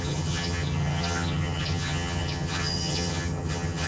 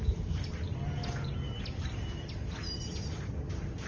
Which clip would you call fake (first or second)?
first